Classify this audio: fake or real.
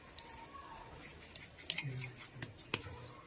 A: fake